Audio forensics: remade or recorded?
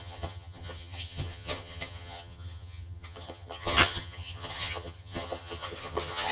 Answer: remade